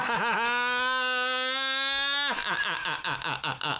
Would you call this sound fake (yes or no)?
no